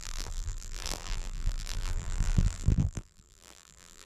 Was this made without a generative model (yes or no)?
no